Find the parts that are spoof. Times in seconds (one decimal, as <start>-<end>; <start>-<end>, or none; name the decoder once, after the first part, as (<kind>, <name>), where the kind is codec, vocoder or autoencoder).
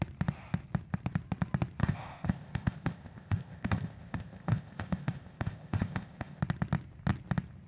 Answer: 1.8-6.4 (codec, ZipCodec)